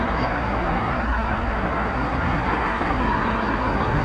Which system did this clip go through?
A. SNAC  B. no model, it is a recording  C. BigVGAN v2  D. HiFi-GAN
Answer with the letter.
A